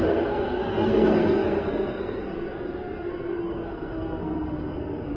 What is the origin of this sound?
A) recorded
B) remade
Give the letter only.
B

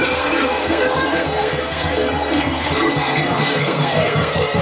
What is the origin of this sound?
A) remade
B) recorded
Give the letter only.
A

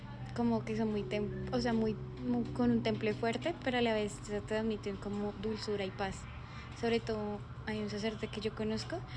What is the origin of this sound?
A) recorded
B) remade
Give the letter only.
A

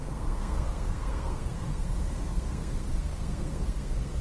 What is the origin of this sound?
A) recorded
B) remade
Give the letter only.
B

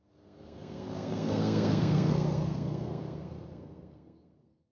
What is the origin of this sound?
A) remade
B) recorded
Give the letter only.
A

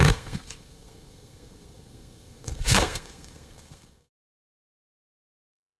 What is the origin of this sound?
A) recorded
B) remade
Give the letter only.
B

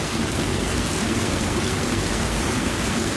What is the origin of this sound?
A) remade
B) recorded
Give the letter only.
A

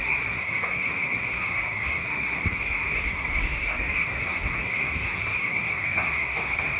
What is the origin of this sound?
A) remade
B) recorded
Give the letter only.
A